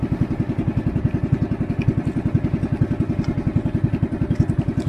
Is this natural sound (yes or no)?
yes